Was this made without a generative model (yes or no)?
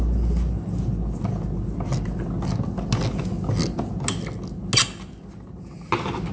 yes